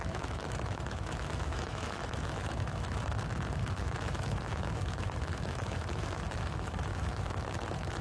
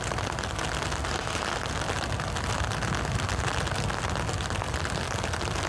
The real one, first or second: second